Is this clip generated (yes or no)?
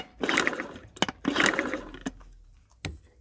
no